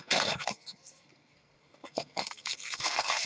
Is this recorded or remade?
remade